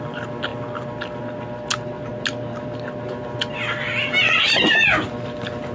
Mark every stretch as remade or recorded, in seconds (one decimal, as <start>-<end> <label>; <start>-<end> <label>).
0.0-5.7 recorded

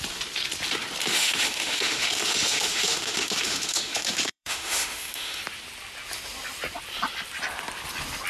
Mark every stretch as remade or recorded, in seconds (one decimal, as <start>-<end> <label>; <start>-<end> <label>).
0.0-1.0 recorded; 1.0-5.4 remade; 5.4-8.3 recorded

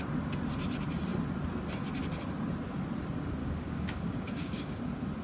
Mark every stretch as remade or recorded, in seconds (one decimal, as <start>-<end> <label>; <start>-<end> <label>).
0.0-3.4 recorded; 3.4-4.8 remade; 4.8-5.2 recorded

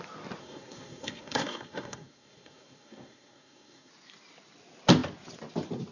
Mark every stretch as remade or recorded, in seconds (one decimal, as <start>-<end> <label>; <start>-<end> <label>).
0.0-0.4 recorded; 0.4-3.9 remade; 3.9-5.9 recorded